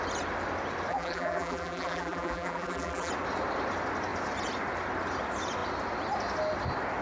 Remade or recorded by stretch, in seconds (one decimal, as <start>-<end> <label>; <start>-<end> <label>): 0.0-0.9 recorded; 0.9-3.1 remade; 3.1-7.0 recorded